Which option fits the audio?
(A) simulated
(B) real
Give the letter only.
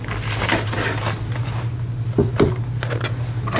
B